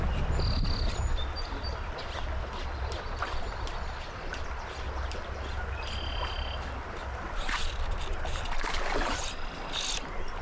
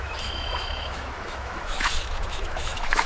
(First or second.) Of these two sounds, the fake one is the second